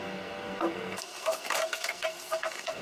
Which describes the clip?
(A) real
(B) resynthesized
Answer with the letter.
B